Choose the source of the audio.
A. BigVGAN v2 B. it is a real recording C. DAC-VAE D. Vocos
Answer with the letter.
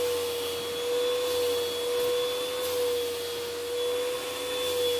B